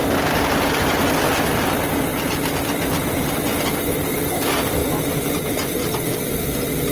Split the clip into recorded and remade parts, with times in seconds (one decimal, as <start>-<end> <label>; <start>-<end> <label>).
0.0-2.1 recorded; 2.1-3.2 remade; 3.2-4.8 recorded; 4.8-5.8 remade; 5.8-6.9 recorded